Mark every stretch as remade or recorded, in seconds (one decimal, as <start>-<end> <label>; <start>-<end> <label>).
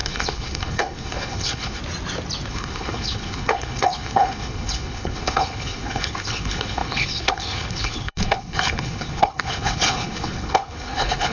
0.0-1.8 remade; 1.8-2.5 recorded; 2.5-11.3 remade